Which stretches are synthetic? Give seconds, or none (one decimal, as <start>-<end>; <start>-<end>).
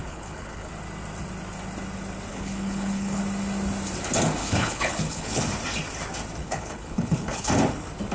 0.0-0.7; 2.3-3.2; 4.4-5.4; 6.4-7.5